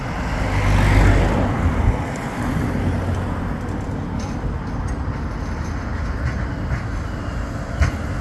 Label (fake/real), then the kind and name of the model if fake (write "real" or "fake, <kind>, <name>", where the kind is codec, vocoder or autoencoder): real